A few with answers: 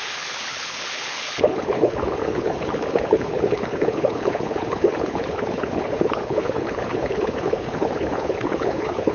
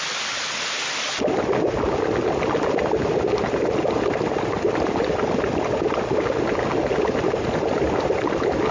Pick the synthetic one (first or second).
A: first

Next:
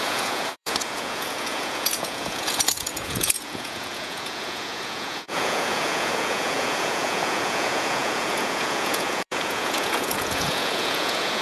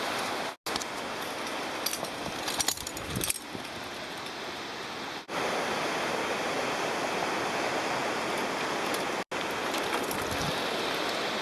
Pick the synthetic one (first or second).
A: first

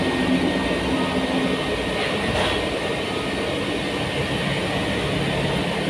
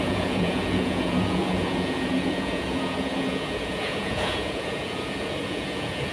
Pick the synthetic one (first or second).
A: second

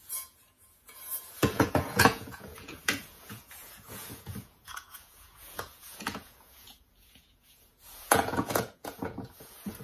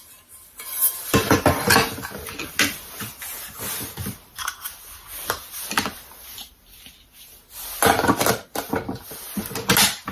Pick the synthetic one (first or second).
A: first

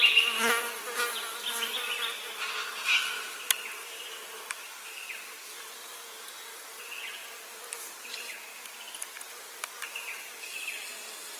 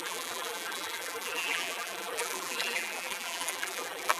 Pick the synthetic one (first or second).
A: second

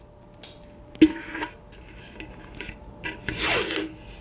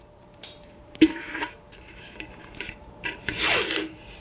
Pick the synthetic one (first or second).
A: second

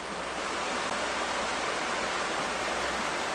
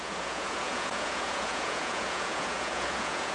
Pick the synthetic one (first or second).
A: second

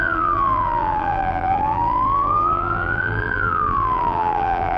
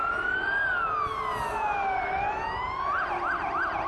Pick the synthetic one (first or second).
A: first